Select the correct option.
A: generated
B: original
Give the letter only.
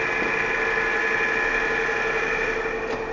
B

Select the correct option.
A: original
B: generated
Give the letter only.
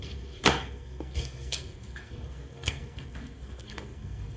B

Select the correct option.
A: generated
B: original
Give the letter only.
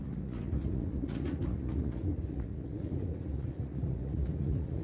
A